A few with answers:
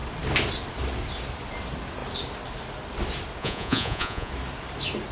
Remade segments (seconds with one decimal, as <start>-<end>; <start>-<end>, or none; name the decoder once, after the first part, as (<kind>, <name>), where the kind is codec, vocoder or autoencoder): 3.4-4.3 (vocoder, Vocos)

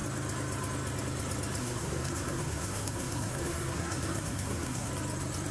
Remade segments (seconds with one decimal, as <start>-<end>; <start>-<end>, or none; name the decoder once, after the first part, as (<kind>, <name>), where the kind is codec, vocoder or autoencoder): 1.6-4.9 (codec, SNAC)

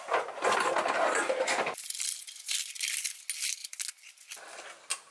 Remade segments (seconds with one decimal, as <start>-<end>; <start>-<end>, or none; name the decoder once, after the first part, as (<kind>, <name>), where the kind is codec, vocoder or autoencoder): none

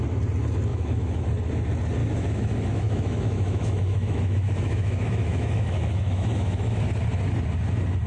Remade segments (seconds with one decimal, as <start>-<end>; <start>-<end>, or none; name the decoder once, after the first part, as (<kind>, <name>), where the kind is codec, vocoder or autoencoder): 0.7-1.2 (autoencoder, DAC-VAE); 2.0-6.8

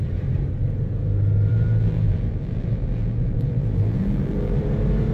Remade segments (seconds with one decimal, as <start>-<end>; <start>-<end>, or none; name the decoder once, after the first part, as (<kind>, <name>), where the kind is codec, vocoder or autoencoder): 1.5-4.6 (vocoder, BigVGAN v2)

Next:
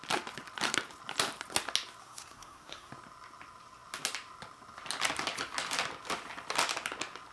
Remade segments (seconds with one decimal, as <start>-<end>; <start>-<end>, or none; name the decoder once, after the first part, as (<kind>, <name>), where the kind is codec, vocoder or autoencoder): 2.0-2.9 (codec, SNAC)